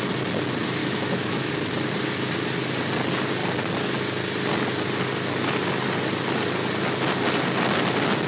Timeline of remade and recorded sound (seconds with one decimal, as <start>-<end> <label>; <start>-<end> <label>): 0.0-0.8 recorded; 0.8-1.5 remade; 1.5-8.3 recorded